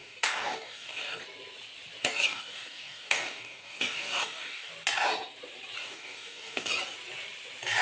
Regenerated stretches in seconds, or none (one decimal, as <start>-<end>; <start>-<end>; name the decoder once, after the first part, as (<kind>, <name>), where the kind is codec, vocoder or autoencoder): 0.0-1.2 (codec, DAC); 2.0-4.7; 5.8-6.7